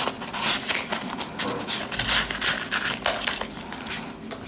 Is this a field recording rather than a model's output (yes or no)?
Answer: yes